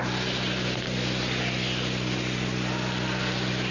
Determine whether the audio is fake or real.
real